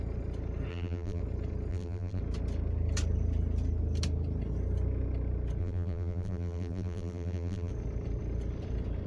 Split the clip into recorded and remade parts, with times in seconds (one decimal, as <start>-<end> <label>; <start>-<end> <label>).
0.0-0.7 recorded; 0.7-1.2 remade; 1.2-1.7 recorded; 1.7-2.2 remade; 2.2-5.6 recorded; 5.6-7.7 remade; 7.7-9.1 recorded